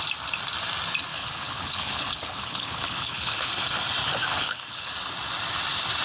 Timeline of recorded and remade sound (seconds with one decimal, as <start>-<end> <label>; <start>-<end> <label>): 0.0-1.1 recorded; 1.1-3.5 remade; 3.5-4.3 recorded; 4.3-4.9 remade; 4.9-6.0 recorded